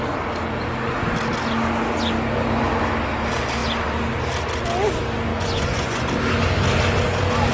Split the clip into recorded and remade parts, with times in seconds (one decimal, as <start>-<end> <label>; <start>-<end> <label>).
0.0-5.3 recorded; 5.3-6.1 remade; 6.1-7.5 recorded

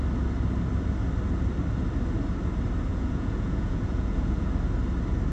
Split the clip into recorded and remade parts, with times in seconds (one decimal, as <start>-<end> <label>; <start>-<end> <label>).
0.0-2.9 recorded; 2.9-4.5 remade; 4.5-5.3 recorded

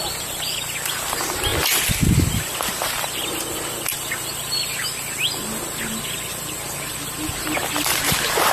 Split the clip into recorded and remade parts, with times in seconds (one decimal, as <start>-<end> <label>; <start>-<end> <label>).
0.0-8.5 recorded